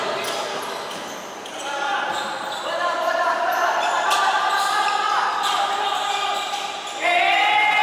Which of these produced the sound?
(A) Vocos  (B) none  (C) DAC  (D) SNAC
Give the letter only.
B